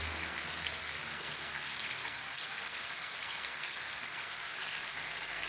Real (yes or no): no